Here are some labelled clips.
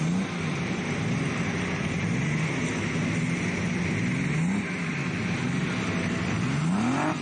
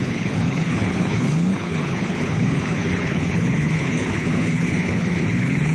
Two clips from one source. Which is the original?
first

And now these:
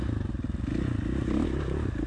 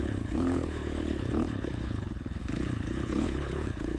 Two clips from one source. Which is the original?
first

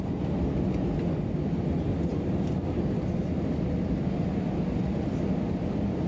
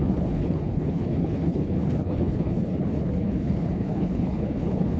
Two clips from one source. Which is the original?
first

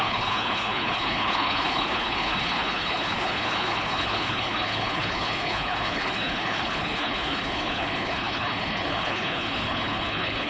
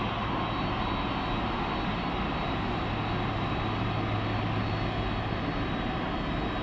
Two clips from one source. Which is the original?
second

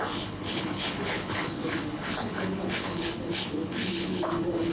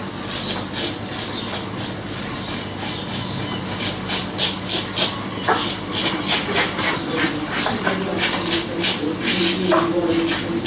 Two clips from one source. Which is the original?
second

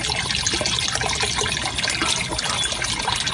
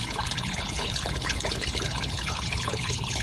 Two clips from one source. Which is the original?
first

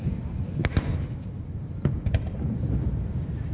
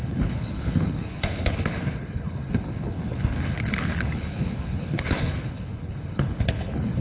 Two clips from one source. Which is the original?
first